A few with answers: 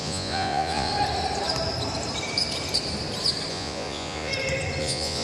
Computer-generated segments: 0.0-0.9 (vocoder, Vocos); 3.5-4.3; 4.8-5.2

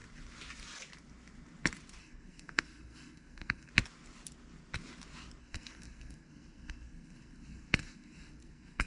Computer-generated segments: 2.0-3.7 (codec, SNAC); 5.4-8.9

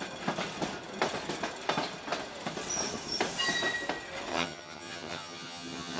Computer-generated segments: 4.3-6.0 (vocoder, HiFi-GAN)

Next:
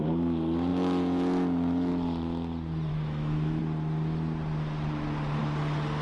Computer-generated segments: 0.7-1.9 (autoencoder, DAC-VAE); 2.9-3.6

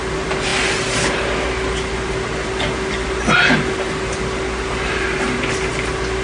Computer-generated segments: none